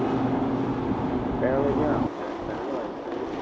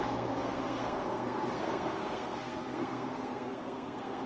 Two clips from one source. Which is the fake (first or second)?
second